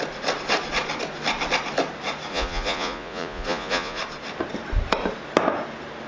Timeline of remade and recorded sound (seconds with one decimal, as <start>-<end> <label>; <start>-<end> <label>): 0.0-2.3 recorded; 2.3-4.0 remade; 4.0-6.1 recorded